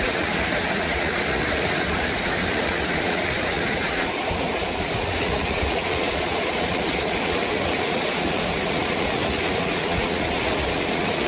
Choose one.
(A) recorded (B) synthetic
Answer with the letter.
B